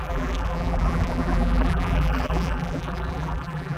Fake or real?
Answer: fake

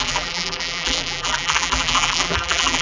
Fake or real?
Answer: fake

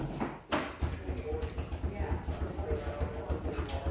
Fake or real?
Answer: real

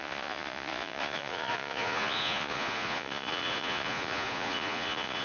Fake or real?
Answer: fake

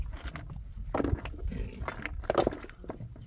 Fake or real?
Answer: real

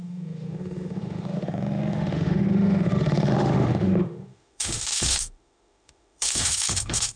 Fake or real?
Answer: fake